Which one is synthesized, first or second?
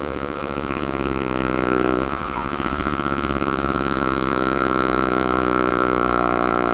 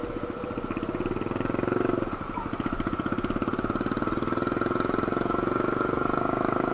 first